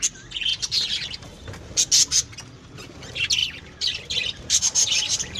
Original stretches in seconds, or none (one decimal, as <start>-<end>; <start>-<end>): 0.0-3.4